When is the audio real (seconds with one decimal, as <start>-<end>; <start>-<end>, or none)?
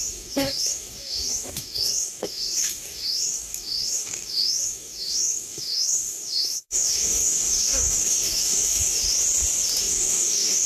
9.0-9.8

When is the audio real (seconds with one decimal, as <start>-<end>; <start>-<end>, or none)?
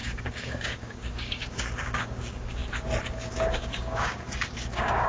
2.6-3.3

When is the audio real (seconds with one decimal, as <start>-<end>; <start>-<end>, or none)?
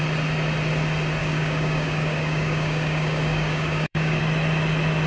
0.0-1.2; 4.2-5.1